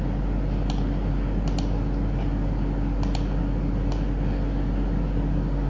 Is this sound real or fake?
real